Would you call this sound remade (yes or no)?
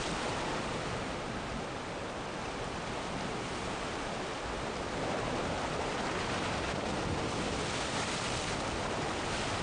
no